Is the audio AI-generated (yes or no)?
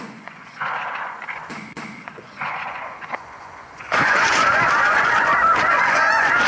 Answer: yes